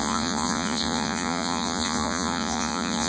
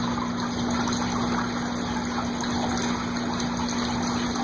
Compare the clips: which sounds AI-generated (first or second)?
first